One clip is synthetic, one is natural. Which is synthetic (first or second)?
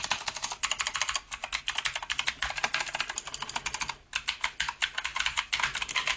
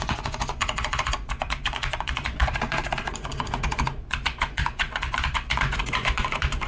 second